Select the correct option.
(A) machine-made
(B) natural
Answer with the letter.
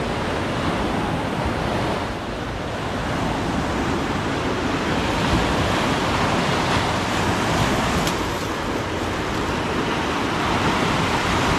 B